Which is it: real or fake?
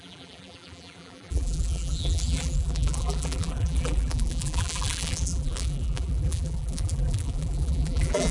fake